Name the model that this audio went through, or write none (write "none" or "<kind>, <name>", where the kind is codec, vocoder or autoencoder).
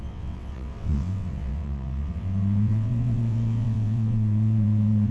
vocoder, WaveNeXt